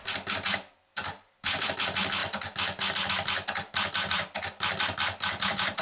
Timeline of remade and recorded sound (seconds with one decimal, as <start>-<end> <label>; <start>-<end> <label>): 0.0-5.8 recorded